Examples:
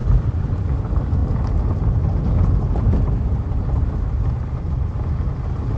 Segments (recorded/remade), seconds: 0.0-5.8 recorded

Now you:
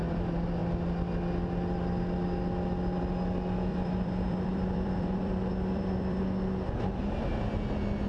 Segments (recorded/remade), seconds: 0.0-3.7 recorded; 3.7-6.2 remade; 6.2-8.1 recorded

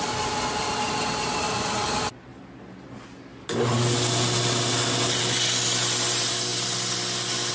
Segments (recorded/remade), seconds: 0.0-7.5 recorded

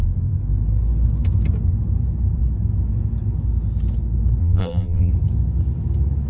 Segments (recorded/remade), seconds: 0.0-4.4 recorded; 4.4-5.1 remade; 5.1-6.3 recorded